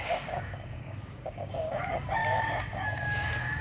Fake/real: fake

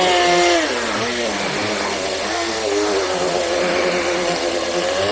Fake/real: real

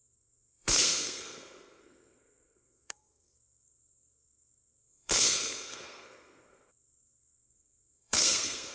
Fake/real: fake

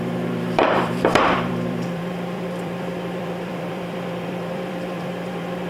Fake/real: fake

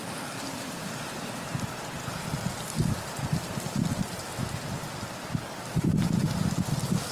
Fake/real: real